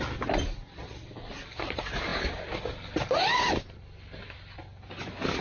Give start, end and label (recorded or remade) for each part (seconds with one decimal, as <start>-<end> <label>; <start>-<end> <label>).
0.0-5.4 recorded